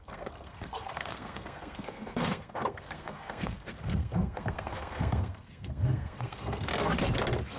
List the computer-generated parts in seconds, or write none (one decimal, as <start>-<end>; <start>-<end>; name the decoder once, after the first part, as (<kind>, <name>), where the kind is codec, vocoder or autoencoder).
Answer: 0.0-6.7 (codec, SNAC)